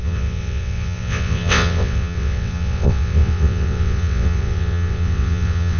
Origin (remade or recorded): remade